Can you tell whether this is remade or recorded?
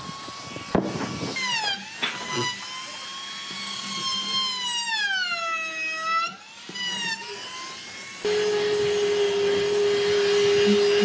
recorded